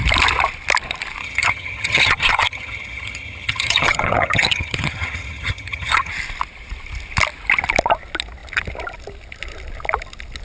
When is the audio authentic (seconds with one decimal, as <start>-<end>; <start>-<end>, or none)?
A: 0.0-1.2; 6.1-10.4